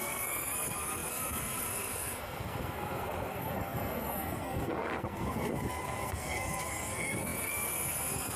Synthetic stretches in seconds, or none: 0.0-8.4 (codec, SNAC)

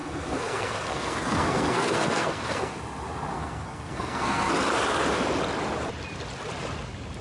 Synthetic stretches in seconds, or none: 0.0-2.8 (codec, SNAC); 3.3-4.5

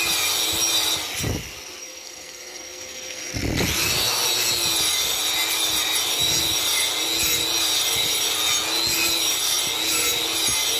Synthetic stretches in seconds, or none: 1.8-3.3 (codec, SNAC)

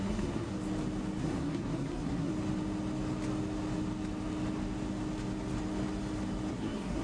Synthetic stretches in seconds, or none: 0.0-0.5 (codec, SNAC); 1.2-2.3; 6.5-7.0

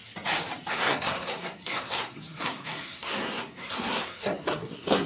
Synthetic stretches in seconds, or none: 0.7-5.1 (codec, SNAC)

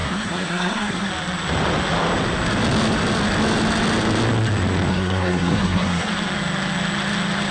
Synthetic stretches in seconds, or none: 0.0-1.1 (codec, SNAC); 4.9-6.1

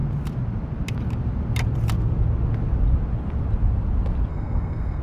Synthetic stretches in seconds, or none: 4.3-5.0 (codec, SNAC)

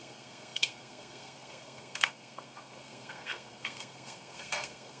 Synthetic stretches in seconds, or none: 0.0-5.0 (codec, SNAC)